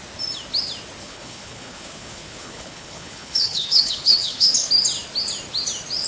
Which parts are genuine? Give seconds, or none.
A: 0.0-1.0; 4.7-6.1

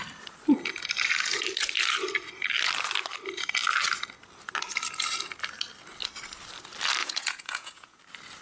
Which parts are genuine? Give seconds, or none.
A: 0.0-7.0; 8.0-8.4

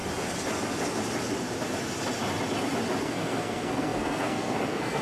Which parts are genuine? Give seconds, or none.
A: 0.0-3.0

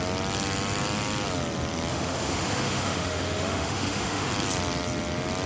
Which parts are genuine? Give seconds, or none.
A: 0.0-1.9; 4.3-5.5

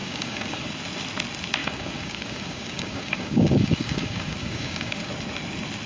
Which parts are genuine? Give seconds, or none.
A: 0.7-1.6; 5.1-5.9

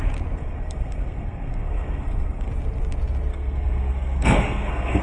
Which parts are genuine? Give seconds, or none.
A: 0.0-0.4; 2.5-3.3

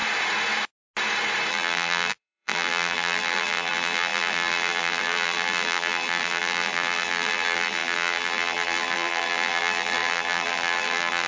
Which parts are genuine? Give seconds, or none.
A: 0.0-1.5

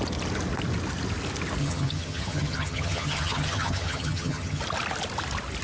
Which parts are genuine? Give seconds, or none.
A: 0.0-1.6; 4.6-5.6